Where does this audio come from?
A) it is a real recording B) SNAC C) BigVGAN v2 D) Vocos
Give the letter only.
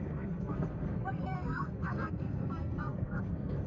B